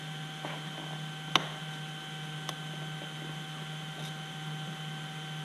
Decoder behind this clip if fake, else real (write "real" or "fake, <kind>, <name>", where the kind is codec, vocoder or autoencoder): real